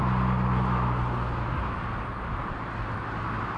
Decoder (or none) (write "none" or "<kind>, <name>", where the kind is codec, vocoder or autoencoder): none